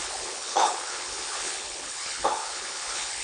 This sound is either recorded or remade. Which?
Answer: remade